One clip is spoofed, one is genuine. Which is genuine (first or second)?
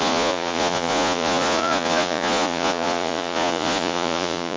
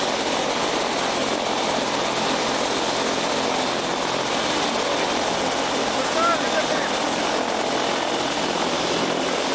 second